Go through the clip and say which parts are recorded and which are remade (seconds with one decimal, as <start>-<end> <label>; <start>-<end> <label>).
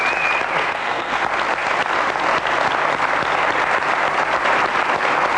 0.0-0.6 recorded; 0.6-1.2 remade; 1.2-5.4 recorded